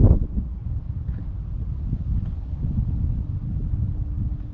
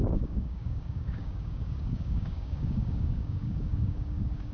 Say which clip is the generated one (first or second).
second